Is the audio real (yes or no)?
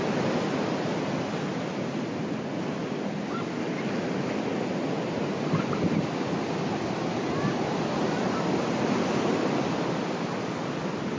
yes